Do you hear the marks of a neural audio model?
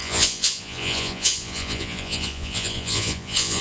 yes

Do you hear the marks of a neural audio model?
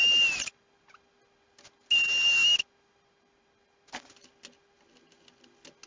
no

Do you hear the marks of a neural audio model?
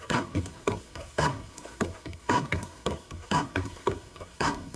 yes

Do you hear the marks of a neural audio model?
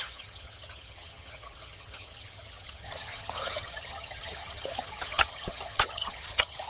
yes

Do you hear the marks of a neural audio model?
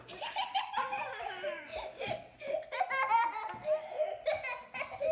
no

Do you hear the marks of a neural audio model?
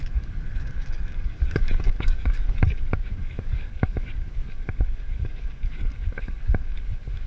yes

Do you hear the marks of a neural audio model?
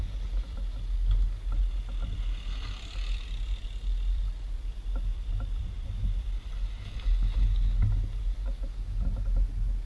no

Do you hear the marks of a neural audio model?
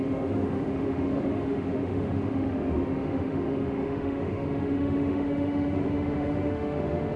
yes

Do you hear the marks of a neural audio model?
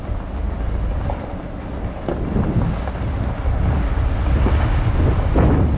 no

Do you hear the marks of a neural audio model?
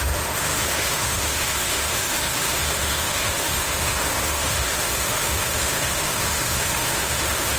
yes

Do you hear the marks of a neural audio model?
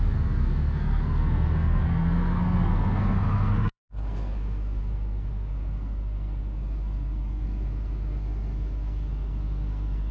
yes